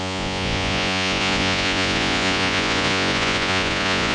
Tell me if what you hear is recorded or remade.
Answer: remade